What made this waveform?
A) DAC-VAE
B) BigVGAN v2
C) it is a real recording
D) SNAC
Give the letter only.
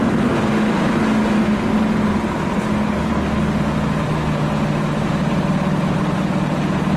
C